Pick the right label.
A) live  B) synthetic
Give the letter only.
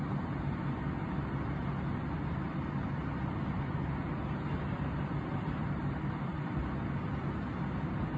A